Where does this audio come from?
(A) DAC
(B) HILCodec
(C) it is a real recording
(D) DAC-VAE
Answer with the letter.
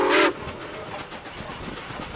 C